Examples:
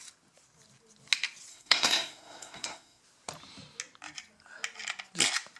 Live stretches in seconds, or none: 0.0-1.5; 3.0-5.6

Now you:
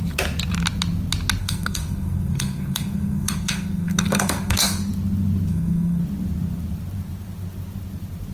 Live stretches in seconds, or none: 0.0-1.4; 4.9-5.5; 6.0-8.3

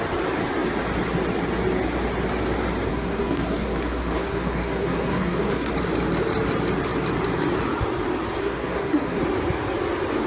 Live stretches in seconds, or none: 0.0-2.9; 5.7-8.4; 9.2-10.3